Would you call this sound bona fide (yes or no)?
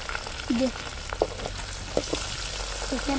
yes